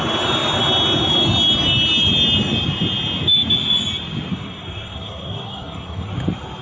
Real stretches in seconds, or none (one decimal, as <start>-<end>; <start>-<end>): 0.0-4.3; 6.1-6.6